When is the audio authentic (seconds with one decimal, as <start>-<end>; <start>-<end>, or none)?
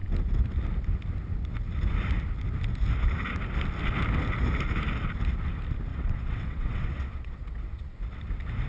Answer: 0.0-5.9; 8.0-8.7